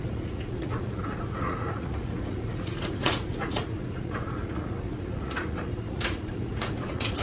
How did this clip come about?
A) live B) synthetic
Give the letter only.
B